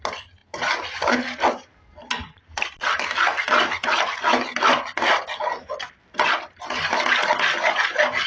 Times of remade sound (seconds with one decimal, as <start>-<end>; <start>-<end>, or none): none